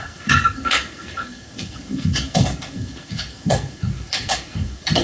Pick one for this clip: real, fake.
fake